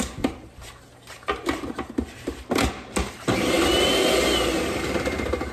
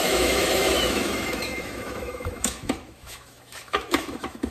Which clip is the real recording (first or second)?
first